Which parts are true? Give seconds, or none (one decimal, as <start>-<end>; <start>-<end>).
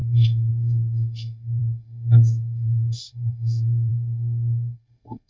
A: none